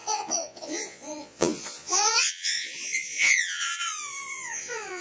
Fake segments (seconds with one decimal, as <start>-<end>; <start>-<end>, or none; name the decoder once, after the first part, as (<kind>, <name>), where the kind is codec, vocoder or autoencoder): 0.0-5.0 (vocoder, Vocos)